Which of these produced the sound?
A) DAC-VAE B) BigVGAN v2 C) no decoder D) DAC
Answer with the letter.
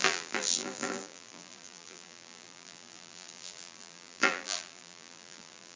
B